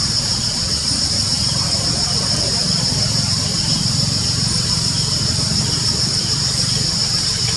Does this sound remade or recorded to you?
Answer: remade